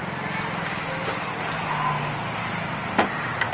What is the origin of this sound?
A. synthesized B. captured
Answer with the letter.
B